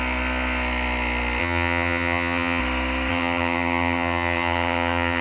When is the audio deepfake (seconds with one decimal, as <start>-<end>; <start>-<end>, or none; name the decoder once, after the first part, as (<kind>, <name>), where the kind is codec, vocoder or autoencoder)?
1.4-2.6 (vocoder, HiFi-GAN); 3.1-5.2